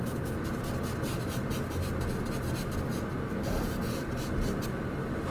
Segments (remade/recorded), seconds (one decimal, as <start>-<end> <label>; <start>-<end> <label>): 0.0-0.9 recorded; 0.9-1.7 remade; 1.7-3.3 recorded; 3.3-3.8 remade; 3.8-5.3 recorded